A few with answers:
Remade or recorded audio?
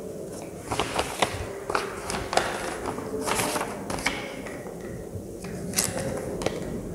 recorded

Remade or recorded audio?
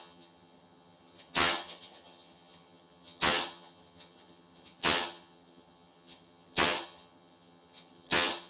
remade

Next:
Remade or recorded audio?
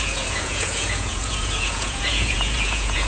remade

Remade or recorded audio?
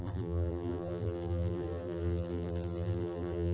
remade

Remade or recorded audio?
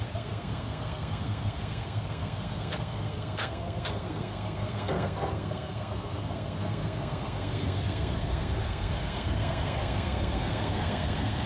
remade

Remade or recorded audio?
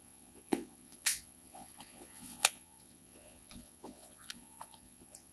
remade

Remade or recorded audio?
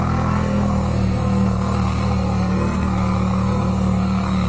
remade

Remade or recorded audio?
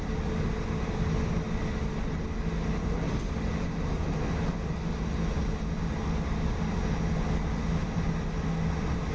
recorded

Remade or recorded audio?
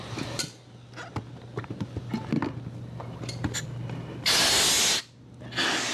recorded